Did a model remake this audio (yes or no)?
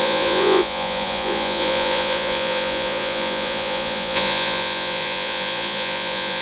yes